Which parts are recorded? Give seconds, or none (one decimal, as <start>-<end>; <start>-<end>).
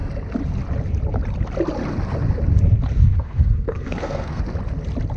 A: 0.0-3.0; 4.4-5.2